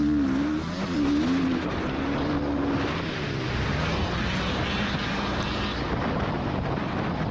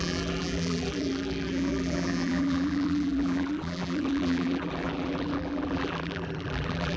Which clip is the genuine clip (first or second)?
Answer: first